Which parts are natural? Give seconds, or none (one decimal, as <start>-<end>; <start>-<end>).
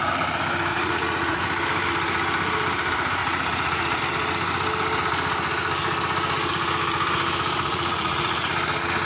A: 0.0-0.7; 1.4-3.2; 4.0-7.7; 8.5-9.1